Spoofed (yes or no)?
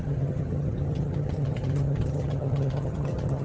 yes